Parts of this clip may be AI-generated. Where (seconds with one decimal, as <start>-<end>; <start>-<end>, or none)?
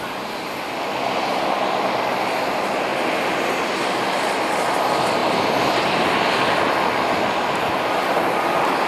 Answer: none